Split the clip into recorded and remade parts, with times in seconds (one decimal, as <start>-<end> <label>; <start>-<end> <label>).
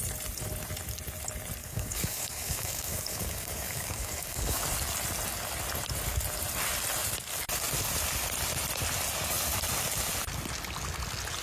0.0-1.6 recorded; 1.6-4.6 remade; 4.6-11.4 recorded